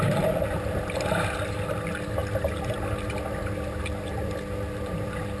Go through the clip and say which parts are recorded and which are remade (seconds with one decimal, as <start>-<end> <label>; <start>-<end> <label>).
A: 0.0-5.4 recorded

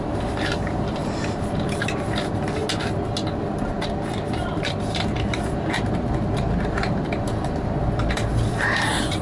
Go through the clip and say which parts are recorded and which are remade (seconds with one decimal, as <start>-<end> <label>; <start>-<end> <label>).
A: 0.0-2.6 remade; 2.6-5.5 recorded; 5.5-9.2 remade

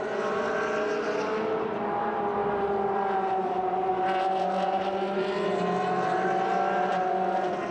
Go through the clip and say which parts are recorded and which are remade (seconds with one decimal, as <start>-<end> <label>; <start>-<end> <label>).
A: 0.0-2.4 recorded; 2.4-3.9 remade; 3.9-7.7 recorded

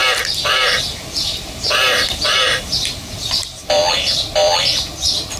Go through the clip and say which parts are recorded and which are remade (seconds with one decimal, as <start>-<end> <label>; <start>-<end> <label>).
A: 0.0-5.4 remade